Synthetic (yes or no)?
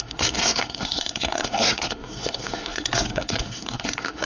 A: yes